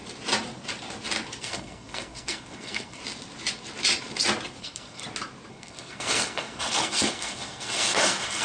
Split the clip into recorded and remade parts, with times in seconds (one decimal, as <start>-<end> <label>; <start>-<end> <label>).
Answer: 0.0-1.4 recorded; 1.4-3.0 remade; 3.0-4.6 recorded; 4.6-5.0 remade; 5.0-5.5 recorded; 5.5-8.4 remade